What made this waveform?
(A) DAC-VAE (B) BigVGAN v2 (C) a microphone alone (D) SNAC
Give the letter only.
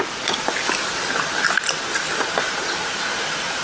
C